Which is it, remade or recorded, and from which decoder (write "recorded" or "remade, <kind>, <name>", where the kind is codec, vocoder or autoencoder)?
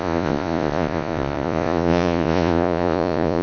remade, vocoder, Vocos